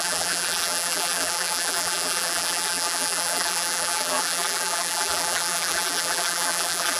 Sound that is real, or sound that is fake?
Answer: fake